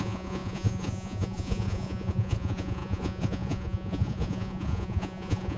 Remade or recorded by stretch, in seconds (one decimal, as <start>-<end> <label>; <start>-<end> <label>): 0.0-5.6 remade